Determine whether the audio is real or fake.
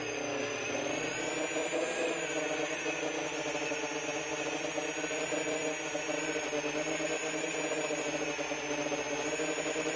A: real